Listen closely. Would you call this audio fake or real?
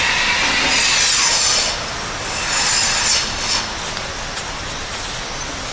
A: real